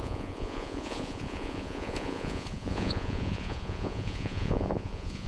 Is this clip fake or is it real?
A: fake